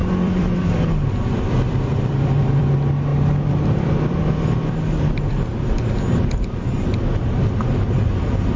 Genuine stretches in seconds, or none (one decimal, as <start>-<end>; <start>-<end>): 1.5-1.9; 2.6-3.1; 4.3-8.6